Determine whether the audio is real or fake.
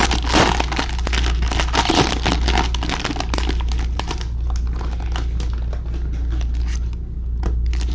real